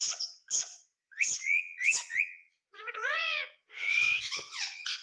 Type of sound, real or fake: fake